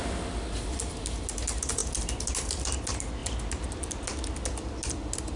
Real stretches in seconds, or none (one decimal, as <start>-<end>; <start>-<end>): 0.0-5.4